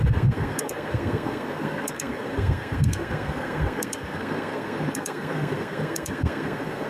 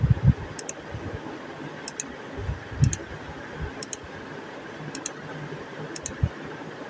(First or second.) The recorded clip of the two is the second